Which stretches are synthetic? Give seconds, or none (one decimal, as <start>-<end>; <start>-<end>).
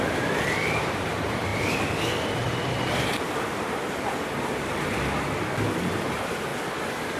0.0-1.5; 5.8-6.5